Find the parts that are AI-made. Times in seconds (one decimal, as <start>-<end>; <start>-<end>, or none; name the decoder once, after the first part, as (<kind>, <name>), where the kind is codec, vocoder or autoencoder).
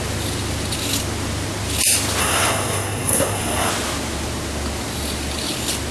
2.2-3.7 (codec, SNAC)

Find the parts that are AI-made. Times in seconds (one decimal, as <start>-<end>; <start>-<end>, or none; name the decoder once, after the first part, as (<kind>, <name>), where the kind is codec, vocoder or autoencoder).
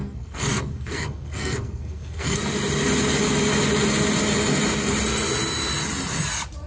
0.0-2.4 (codec, SNAC)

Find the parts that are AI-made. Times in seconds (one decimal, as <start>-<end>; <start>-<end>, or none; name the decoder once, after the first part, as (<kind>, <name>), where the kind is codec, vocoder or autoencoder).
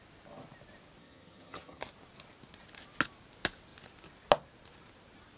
1.0-1.8 (vocoder, HiFi-GAN)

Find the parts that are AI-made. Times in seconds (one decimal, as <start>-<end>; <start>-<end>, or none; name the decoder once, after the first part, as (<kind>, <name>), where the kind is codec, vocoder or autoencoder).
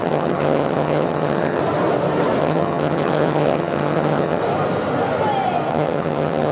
0.0-1.6 (vocoder, HiFi-GAN); 2.4-4.4; 5.7-6.5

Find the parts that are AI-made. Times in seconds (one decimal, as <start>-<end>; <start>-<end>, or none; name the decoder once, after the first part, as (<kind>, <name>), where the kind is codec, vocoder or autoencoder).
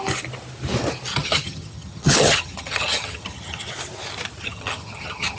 1.1-3.7 (vocoder, HiFi-GAN); 4.4-5.4